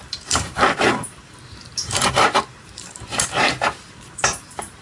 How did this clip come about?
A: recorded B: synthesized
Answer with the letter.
B